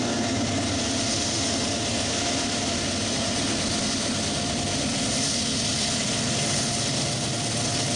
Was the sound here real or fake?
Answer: real